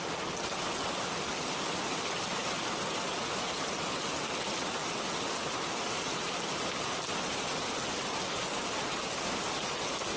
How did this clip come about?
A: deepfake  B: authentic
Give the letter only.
B